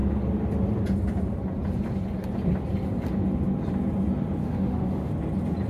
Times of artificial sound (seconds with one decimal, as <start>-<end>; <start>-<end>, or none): 4.4-5.1